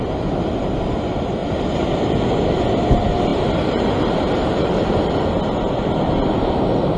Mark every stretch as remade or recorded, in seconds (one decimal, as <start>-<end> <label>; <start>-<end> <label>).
0.0-3.3 recorded; 3.3-5.2 remade; 5.2-7.0 recorded